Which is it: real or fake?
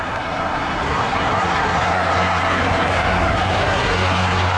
fake